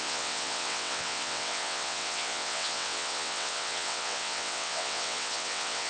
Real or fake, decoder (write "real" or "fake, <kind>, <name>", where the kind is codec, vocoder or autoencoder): fake, vocoder, WaveNeXt